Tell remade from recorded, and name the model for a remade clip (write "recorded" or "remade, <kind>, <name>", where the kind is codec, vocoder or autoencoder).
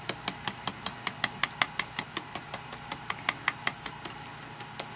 recorded